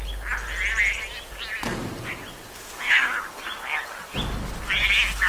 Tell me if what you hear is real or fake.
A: real